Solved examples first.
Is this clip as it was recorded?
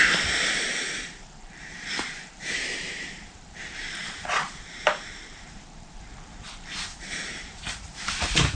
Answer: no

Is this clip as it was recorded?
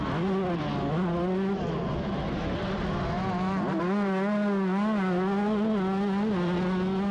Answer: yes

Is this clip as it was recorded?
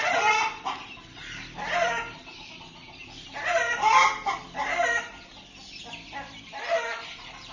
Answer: no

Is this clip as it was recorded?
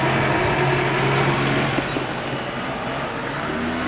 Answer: yes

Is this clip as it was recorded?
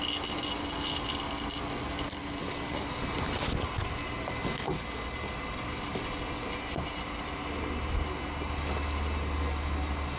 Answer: yes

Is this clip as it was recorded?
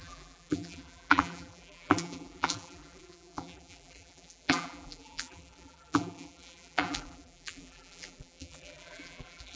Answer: no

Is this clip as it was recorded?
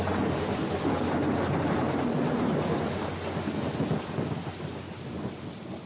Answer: yes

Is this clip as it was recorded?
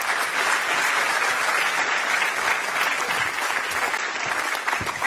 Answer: yes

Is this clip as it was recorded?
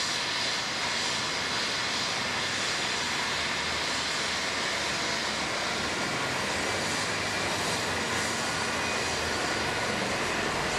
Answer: yes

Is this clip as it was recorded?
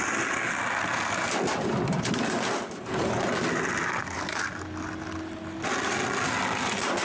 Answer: yes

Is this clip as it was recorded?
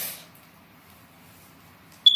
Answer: yes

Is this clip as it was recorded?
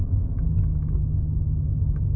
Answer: yes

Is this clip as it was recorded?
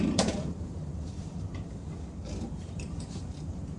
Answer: no